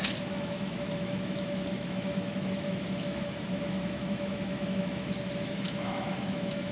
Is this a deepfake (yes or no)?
yes